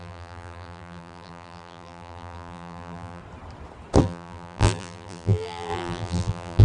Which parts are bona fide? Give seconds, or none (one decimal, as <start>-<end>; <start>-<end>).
3.2-4.0